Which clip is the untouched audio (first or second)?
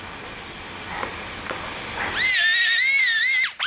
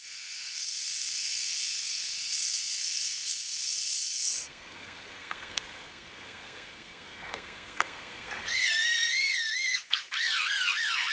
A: first